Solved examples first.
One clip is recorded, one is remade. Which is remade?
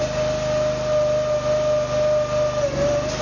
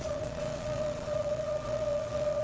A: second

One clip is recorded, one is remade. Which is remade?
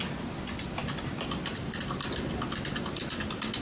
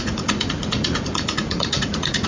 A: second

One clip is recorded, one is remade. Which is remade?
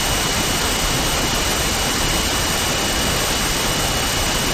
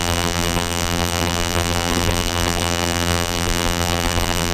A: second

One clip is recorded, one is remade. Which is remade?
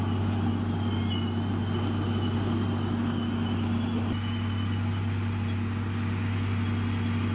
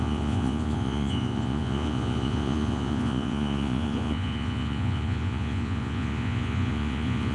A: second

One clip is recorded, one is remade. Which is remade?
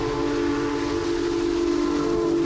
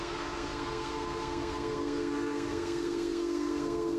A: second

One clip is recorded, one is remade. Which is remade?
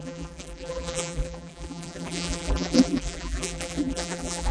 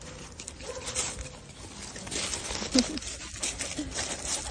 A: first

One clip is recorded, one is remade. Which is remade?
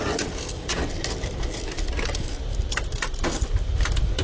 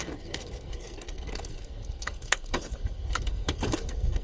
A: second